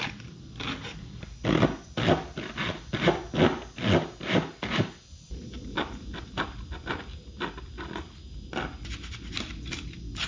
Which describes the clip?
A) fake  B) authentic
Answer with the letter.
B